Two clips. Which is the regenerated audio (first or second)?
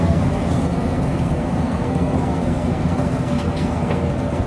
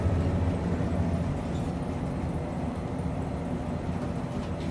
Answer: first